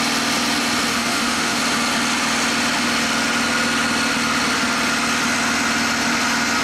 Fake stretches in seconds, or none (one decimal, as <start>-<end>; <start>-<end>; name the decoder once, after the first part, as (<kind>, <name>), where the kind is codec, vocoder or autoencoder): 0.9-1.6 (autoencoder, DAC-VAE)